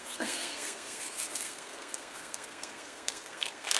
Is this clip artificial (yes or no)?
yes